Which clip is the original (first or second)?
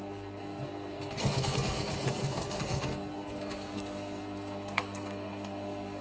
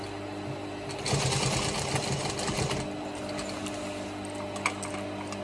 second